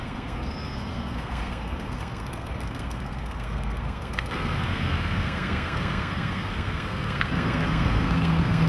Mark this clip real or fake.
fake